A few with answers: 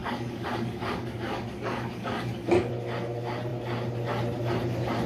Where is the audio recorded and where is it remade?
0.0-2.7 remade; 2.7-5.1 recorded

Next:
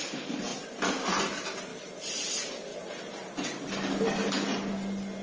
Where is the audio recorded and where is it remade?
0.0-1.7 recorded; 1.7-2.3 remade; 2.3-2.7 recorded; 2.7-3.7 remade; 3.7-5.2 recorded

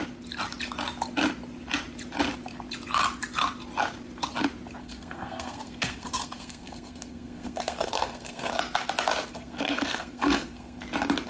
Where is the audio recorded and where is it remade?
0.0-4.8 recorded; 4.8-8.5 remade; 8.5-9.3 recorded; 9.3-10.8 remade; 10.8-11.3 recorded

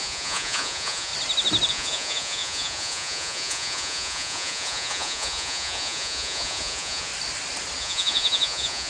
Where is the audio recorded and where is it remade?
0.0-1.1 remade; 1.1-1.7 recorded; 1.7-7.1 remade; 7.1-7.8 recorded; 7.8-8.9 remade